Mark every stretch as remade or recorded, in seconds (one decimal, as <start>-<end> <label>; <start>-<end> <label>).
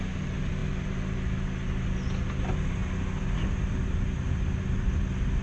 0.0-5.4 recorded